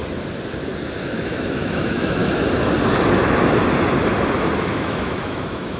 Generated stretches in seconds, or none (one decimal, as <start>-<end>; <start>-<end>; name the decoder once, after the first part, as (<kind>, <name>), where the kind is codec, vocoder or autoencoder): 1.0-2.2 (autoencoder, DAC-VAE); 4.6-5.8